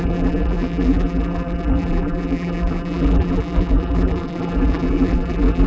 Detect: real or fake fake